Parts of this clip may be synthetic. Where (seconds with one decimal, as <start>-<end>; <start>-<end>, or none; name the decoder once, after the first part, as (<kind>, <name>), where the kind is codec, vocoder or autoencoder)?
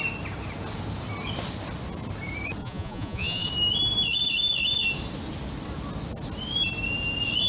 2.6-3.5 (vocoder, Vocos)